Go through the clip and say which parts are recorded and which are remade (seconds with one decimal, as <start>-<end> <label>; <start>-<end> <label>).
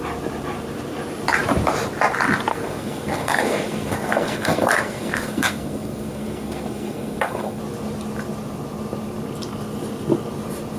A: 0.0-2.5 recorded; 2.5-7.6 remade; 7.6-10.8 recorded